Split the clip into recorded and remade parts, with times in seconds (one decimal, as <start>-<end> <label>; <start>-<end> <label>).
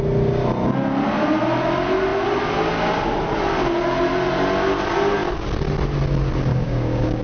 0.0-6.5 recorded; 6.5-7.2 remade